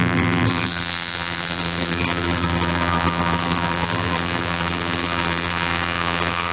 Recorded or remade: remade